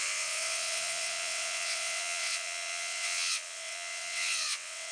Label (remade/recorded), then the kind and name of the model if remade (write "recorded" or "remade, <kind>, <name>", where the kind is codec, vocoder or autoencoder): remade, vocoder, WaveNeXt